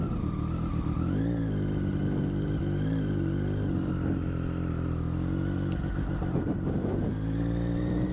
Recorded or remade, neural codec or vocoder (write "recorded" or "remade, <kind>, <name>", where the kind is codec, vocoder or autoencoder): recorded